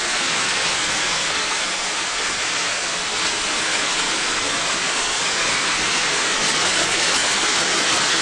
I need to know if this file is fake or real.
fake